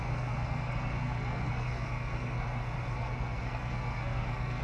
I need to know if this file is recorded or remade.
remade